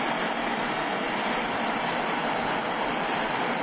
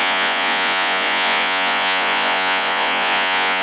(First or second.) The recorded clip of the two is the first